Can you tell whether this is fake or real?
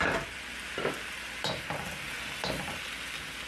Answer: real